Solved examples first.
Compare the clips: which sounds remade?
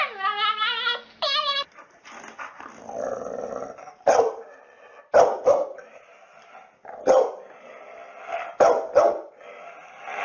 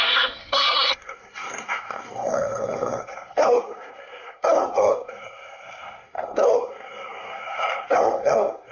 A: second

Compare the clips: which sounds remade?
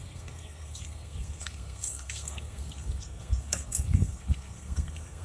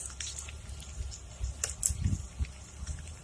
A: first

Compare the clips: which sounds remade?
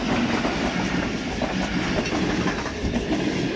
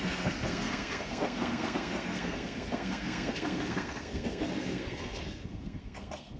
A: second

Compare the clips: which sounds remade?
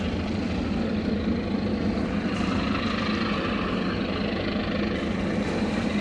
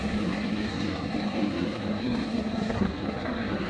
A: second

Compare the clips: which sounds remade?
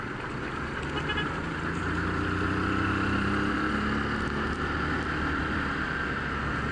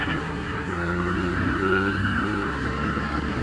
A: second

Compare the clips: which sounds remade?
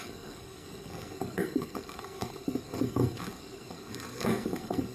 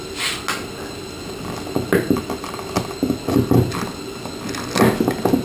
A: first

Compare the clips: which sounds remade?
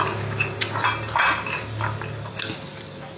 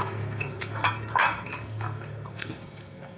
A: second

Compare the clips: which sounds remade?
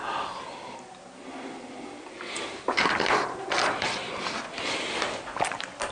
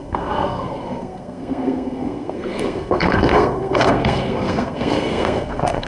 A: second